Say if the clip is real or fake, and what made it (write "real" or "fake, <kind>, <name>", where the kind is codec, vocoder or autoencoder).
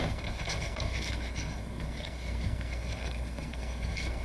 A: fake, codec, SNAC